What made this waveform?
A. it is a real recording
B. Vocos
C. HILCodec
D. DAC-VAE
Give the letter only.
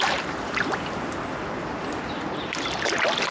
A